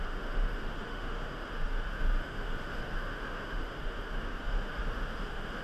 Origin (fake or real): fake